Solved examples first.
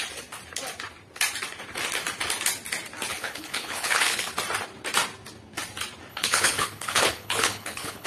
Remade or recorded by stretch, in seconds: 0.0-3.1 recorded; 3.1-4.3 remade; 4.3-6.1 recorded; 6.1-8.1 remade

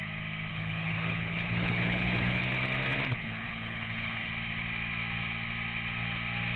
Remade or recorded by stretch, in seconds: 0.0-0.5 recorded; 0.5-2.4 remade; 2.4-3.2 recorded; 3.2-4.3 remade; 4.3-6.6 recorded

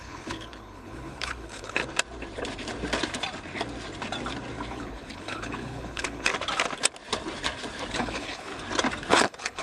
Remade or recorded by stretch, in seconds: 0.0-1.8 remade; 1.8-4.7 recorded; 4.7-6.3 remade; 6.3-7.9 recorded; 7.9-8.5 remade; 8.5-9.1 recorded; 9.1-9.6 remade

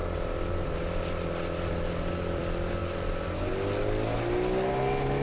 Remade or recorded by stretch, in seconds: 0.0-5.2 recorded

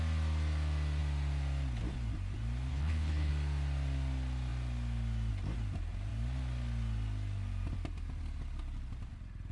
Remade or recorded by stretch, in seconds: 0.0-2.7 recorded; 2.7-3.3 remade; 3.3-9.5 recorded